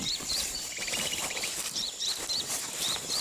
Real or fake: fake